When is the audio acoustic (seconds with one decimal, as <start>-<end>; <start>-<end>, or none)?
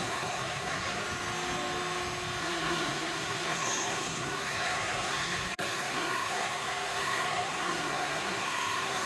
1.0-2.4